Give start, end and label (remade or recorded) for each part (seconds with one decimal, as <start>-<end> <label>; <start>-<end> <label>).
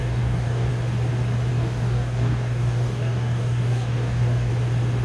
0.0-0.7 remade; 0.7-1.5 recorded; 1.5-4.5 remade; 4.5-5.0 recorded